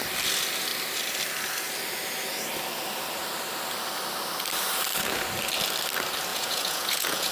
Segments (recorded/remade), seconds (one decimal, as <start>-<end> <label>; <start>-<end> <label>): 0.0-6.3 recorded; 6.3-7.3 remade